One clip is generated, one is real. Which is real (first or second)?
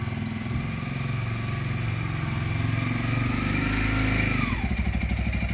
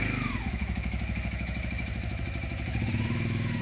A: first